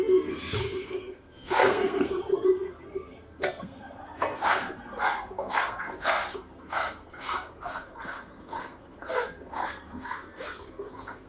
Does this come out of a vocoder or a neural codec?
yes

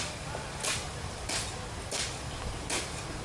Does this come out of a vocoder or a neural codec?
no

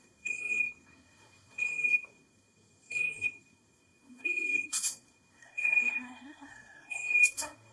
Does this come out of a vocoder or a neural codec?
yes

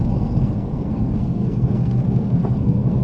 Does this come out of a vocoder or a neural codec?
yes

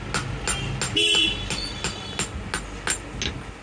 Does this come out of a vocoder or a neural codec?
no